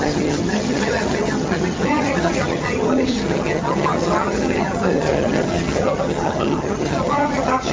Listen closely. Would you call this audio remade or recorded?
remade